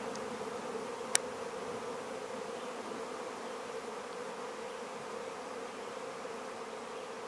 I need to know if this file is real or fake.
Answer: real